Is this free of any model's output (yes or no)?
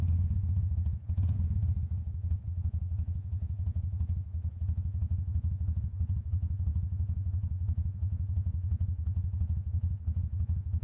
no